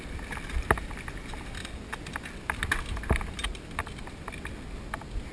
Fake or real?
real